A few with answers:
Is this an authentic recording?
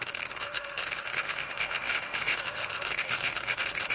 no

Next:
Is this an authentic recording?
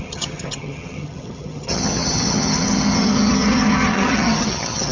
no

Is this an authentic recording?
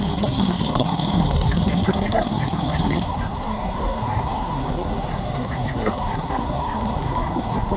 no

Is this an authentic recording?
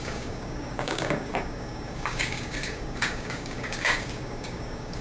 no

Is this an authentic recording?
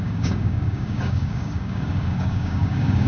no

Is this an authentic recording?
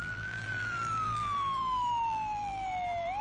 no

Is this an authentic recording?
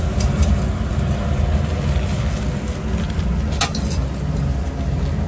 yes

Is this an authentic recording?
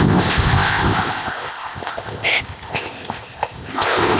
no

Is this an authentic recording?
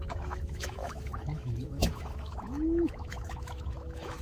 no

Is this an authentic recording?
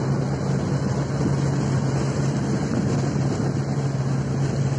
yes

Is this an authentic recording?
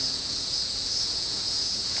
no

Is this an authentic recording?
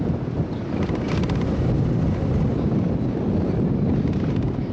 yes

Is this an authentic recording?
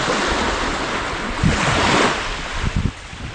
yes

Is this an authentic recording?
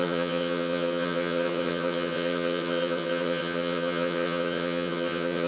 no